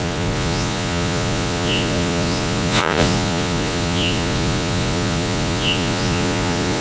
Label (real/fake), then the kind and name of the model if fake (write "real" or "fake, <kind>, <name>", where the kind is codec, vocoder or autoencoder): fake, vocoder, Vocos